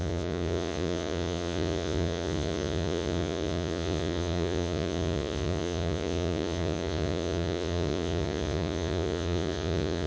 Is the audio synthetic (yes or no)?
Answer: yes